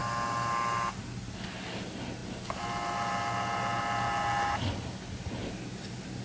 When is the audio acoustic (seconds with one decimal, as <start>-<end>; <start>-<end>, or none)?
0.0-6.2